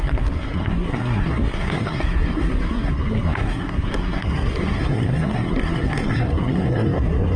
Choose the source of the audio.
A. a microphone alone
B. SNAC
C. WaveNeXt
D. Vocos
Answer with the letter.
B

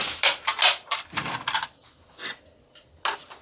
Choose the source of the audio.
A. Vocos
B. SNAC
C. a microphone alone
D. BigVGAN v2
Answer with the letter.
C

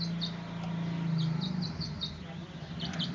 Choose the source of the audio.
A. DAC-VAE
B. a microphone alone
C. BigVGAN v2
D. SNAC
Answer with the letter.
B